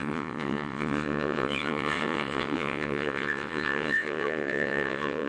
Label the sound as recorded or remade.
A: remade